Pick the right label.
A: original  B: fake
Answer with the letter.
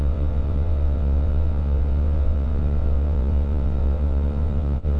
B